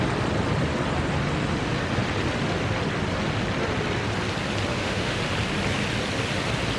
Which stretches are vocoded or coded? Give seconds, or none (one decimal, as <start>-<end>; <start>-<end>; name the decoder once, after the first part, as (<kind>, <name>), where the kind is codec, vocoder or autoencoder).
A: 4.7-5.2 (autoencoder, DAC-VAE)